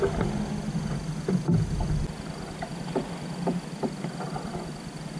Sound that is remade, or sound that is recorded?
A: recorded